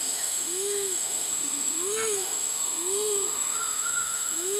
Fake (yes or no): yes